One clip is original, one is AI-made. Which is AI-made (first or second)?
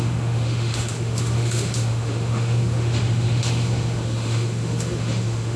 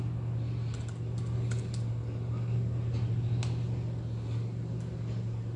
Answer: first